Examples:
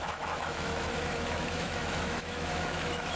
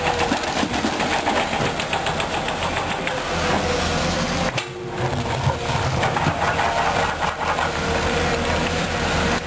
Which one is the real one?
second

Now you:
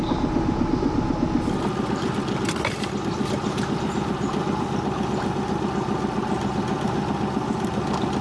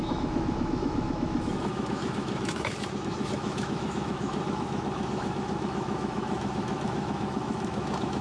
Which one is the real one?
first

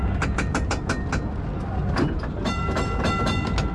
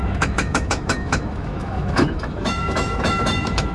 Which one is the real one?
first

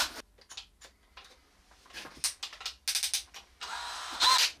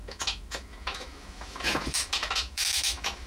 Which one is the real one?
first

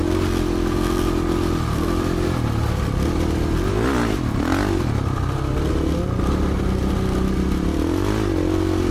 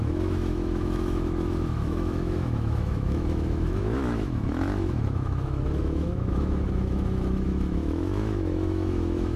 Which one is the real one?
first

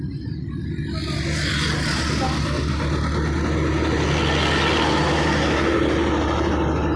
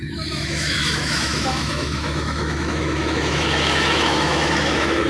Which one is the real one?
first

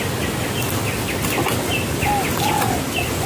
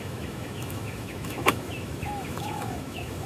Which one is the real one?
first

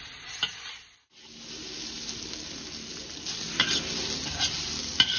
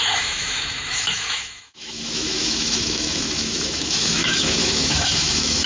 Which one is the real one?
first